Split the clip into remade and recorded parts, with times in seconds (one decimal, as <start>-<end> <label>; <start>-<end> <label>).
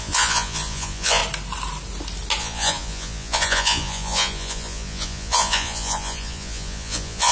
0.0-1.2 remade; 1.2-2.4 recorded; 2.4-7.3 remade